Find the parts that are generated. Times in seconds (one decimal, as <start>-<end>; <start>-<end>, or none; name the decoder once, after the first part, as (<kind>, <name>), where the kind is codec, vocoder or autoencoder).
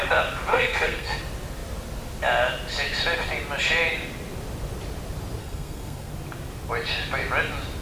0.5-1.2 (codec, SNAC); 5.4-6.1